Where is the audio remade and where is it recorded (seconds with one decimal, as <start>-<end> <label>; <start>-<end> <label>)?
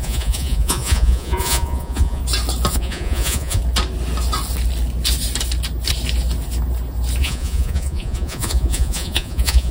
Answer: 0.0-2.2 remade; 2.2-2.7 recorded; 2.7-3.6 remade; 3.6-7.2 recorded; 7.2-9.7 remade